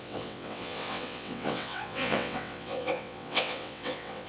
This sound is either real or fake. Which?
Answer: fake